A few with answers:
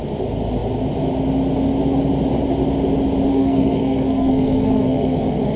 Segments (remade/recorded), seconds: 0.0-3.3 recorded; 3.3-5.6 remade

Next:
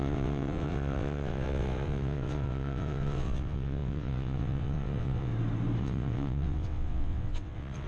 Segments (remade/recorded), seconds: 0.0-5.3 remade; 5.3-5.8 recorded; 5.8-7.9 remade

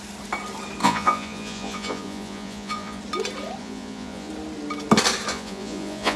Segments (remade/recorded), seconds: 0.0-0.8 recorded; 0.8-3.0 remade; 3.0-3.6 recorded; 3.6-4.3 remade; 4.3-5.3 recorded; 5.3-6.2 remade

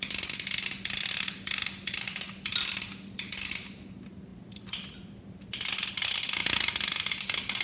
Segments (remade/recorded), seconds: 0.0-7.6 recorded

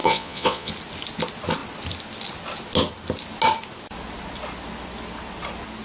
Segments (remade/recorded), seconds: 0.0-0.7 remade; 0.7-5.8 recorded

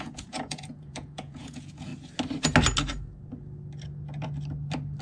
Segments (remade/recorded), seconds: 0.0-1.9 remade; 1.9-5.0 recorded

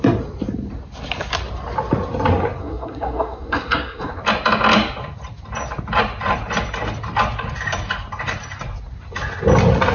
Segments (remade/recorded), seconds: 0.0-2.6 recorded; 2.6-4.2 remade; 4.2-9.9 recorded